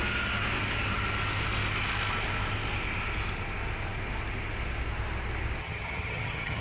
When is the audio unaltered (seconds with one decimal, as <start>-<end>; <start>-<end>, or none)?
0.0-5.6